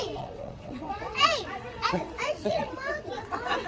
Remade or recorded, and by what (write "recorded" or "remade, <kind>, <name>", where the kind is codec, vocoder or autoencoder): remade, vocoder, WaveNeXt